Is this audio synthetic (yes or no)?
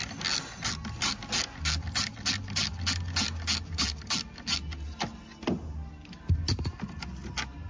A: no